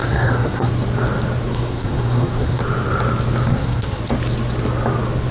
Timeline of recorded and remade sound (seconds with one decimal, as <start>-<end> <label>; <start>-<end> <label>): 0.0-0.7 remade; 0.7-1.5 recorded; 1.5-2.6 remade; 2.6-3.5 recorded; 3.5-4.0 remade; 4.0-5.3 recorded